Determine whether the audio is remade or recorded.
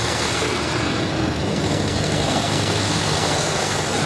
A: remade